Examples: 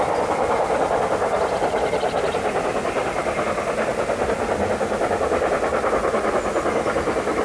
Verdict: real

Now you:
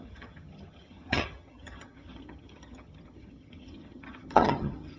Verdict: fake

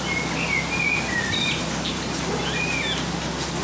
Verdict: real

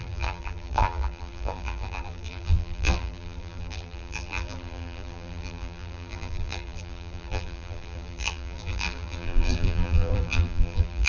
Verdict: fake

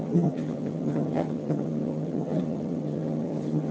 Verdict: fake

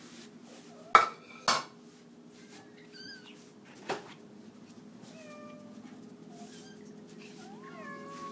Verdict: real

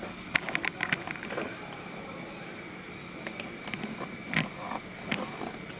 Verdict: real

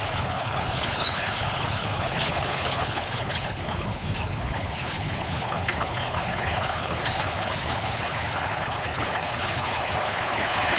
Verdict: fake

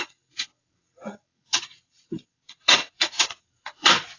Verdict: fake